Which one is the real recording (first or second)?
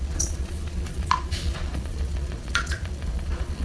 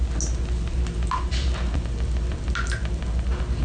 second